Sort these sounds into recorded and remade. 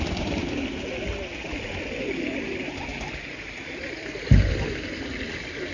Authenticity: recorded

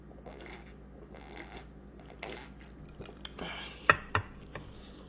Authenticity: recorded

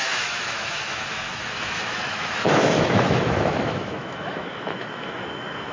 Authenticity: remade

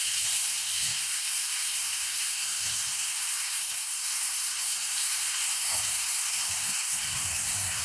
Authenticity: remade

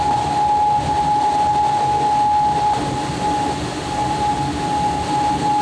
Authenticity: recorded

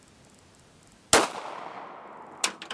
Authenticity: recorded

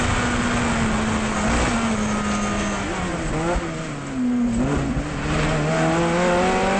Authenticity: recorded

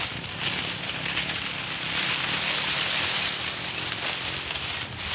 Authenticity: recorded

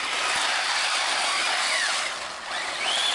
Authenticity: recorded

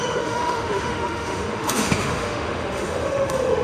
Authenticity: remade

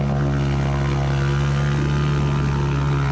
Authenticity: recorded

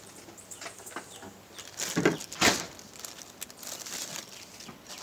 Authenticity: recorded